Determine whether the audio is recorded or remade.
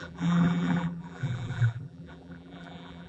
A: remade